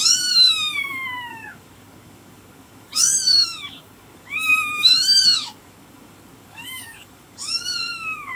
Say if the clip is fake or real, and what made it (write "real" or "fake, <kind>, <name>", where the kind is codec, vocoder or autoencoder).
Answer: fake, codec, DAC